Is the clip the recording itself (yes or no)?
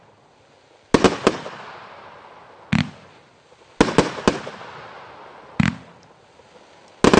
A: yes